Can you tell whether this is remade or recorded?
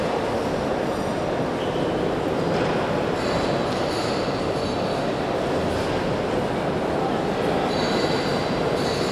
recorded